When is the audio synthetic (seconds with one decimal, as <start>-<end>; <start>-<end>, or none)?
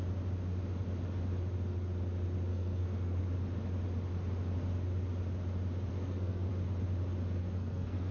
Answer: 2.5-3.2; 5.9-6.5; 7.4-8.1